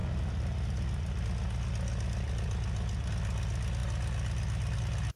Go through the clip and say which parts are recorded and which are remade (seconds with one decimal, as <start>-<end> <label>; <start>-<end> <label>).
0.0-5.2 recorded